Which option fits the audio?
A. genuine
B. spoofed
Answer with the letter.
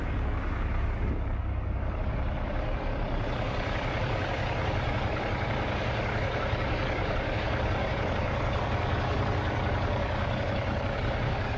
B